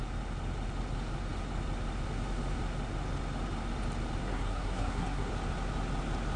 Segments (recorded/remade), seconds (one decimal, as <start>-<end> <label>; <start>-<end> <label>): 0.0-4.2 recorded; 4.2-5.3 remade; 5.3-6.4 recorded